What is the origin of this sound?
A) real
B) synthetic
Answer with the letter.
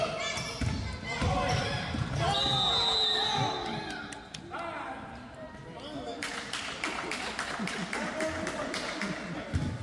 A